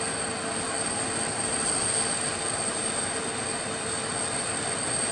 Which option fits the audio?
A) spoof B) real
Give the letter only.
B